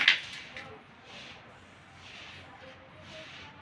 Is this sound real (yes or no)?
yes